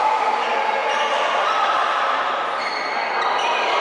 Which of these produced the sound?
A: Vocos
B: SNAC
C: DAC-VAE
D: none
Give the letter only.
D